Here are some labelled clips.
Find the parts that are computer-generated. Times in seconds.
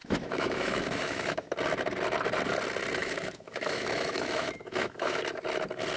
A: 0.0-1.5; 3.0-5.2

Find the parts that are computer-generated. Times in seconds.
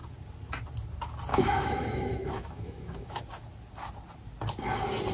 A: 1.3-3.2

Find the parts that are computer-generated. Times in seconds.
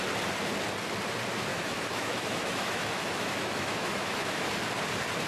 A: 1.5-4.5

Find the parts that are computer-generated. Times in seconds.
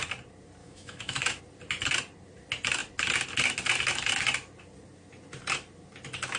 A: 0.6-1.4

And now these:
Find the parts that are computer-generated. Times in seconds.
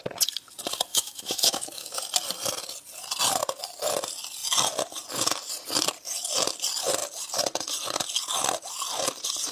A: 0.9-2.0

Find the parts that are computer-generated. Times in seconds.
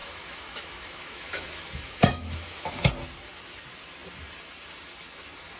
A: 0.0-2.9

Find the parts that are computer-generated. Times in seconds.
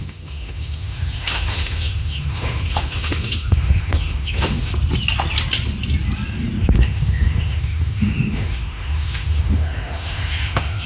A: 0.0-4.7; 6.6-10.9